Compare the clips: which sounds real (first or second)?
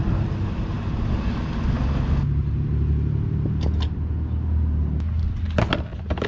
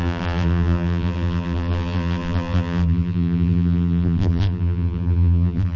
first